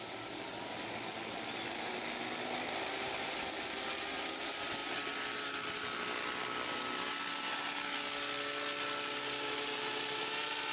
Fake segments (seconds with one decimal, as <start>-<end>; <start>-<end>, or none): none